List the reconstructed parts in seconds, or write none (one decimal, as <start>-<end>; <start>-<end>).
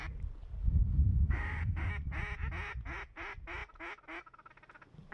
0.6-1.9